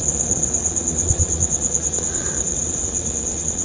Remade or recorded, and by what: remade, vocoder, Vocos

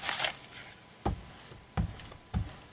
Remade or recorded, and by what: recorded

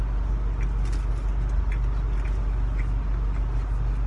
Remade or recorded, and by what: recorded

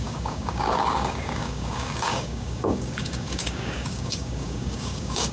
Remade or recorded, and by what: remade, codec, DAC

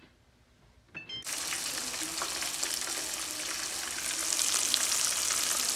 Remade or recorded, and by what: recorded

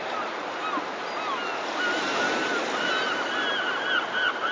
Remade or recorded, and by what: recorded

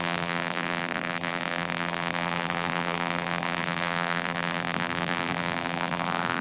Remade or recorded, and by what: remade, vocoder, BigVGAN v2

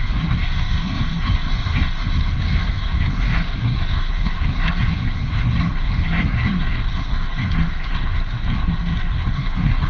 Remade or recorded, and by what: remade, codec, SNAC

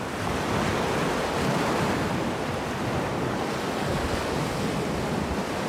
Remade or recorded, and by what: recorded